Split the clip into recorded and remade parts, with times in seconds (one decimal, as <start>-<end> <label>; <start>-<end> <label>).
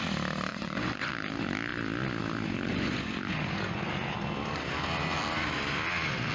0.0-0.5 recorded; 0.5-1.1 remade; 1.1-2.7 recorded; 2.7-3.9 remade; 3.9-6.3 recorded